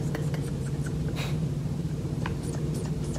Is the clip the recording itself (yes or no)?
no